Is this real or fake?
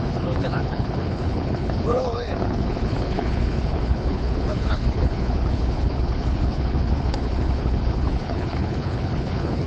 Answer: fake